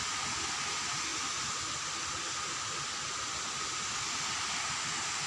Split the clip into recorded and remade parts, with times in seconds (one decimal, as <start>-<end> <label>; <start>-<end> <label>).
0.0-5.3 recorded

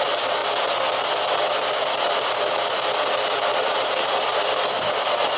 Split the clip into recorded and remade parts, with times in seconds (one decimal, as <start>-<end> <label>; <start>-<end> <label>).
0.0-0.4 remade; 0.4-3.6 recorded; 3.6-5.4 remade